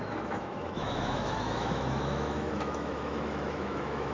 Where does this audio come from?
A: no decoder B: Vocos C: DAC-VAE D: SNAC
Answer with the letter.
C